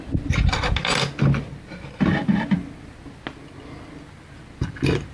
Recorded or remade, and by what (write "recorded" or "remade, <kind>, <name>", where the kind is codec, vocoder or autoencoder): recorded